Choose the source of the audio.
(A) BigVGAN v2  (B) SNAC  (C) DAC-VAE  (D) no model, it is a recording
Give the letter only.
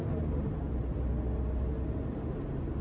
D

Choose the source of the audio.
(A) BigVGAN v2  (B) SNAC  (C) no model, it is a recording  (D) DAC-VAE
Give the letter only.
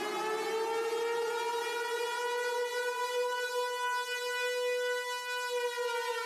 C